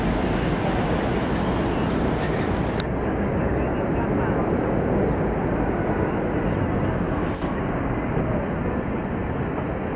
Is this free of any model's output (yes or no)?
yes